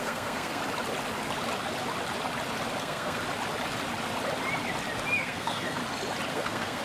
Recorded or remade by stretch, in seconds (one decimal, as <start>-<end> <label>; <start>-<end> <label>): 0.0-0.6 remade; 0.6-2.8 recorded; 2.8-3.2 remade; 3.2-5.2 recorded; 5.2-5.8 remade; 5.8-6.3 recorded; 6.3-6.8 remade